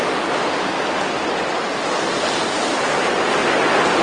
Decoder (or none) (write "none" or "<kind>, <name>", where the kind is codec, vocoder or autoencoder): none